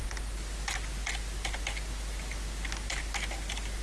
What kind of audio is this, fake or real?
real